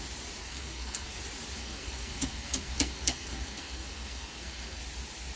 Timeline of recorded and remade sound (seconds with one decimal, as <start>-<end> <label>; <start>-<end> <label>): 0.0-0.4 recorded; 0.4-1.2 remade; 1.2-1.6 recorded; 1.6-4.8 remade; 4.8-5.4 recorded